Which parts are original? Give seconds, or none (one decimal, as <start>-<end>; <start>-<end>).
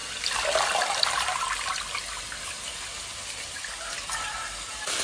0.0-5.0